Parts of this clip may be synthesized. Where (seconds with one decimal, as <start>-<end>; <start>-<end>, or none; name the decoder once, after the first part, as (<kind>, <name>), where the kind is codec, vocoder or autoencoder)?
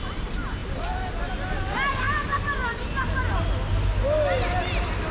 none